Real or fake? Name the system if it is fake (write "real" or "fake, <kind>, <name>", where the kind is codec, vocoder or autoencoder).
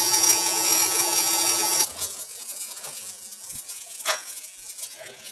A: fake, vocoder, Vocos